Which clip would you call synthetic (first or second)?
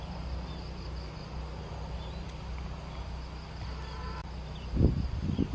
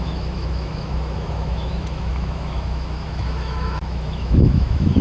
second